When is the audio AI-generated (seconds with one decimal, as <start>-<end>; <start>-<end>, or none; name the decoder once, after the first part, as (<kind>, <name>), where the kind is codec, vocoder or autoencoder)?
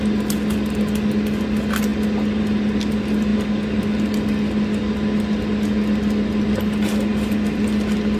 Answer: none